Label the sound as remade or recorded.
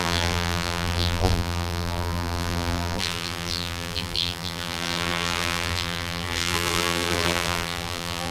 remade